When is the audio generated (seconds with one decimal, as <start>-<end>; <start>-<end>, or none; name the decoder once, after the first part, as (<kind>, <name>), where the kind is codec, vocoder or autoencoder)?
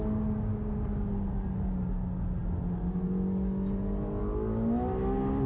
none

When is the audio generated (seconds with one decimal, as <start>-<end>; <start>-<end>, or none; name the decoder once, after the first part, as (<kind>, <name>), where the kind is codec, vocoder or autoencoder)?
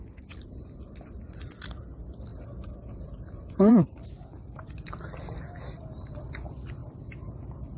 2.3-4.1 (vocoder, BigVGAN v2)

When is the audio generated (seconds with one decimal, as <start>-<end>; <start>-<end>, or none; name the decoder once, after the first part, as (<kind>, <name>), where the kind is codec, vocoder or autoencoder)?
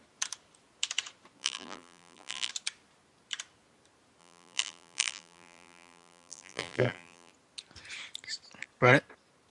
1.4-2.5 (vocoder, BigVGAN v2); 4.2-7.3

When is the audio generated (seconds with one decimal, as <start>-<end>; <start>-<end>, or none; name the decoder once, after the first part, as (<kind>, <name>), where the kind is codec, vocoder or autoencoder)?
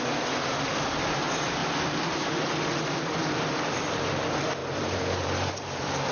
3.2-4.1 (vocoder, BigVGAN v2); 4.6-6.1